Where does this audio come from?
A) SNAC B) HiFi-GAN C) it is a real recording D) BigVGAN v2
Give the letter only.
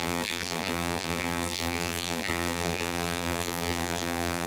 D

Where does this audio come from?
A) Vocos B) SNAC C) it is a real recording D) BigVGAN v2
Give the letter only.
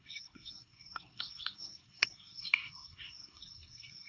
B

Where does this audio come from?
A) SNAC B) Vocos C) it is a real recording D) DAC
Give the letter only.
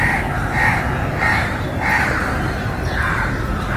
C